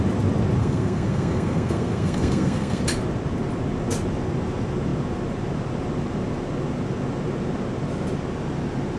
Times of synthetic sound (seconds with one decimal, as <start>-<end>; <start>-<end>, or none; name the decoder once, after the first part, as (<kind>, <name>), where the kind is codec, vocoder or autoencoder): 0.6-2.8 (codec, SNAC)